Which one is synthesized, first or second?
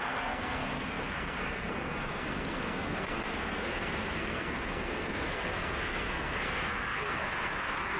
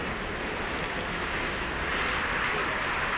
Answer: first